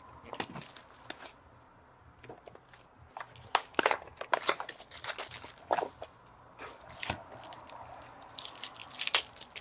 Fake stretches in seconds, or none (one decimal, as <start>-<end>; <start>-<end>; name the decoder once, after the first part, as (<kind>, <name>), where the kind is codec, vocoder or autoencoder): none